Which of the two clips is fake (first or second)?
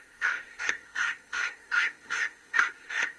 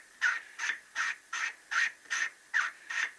first